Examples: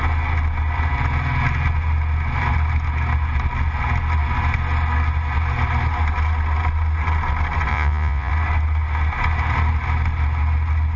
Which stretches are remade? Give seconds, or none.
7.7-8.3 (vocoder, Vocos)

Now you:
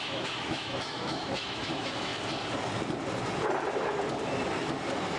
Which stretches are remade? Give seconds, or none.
0.0-2.1 (autoencoder, DAC-VAE)

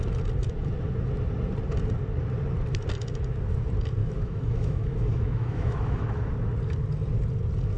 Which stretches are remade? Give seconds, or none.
4.0-6.3 (autoencoder, DAC-VAE)